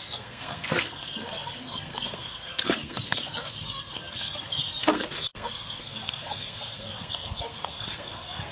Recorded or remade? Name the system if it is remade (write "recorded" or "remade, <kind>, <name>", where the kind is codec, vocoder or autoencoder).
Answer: remade, codec, SNAC